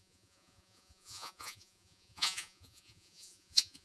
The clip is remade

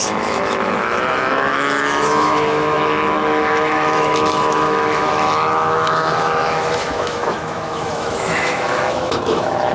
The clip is remade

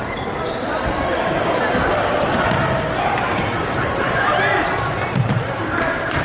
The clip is remade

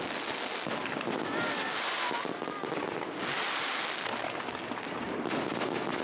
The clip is recorded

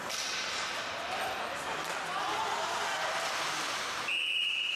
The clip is recorded